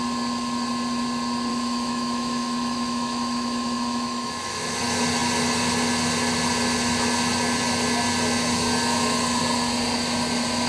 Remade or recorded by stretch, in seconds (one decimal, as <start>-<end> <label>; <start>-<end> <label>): 0.0-1.5 recorded; 1.5-4.8 remade; 4.8-10.7 recorded